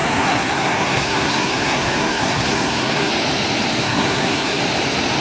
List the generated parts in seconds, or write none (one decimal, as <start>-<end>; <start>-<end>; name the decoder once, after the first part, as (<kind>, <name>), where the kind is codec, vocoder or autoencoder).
0.0-3.1 (codec, SNAC); 3.8-4.6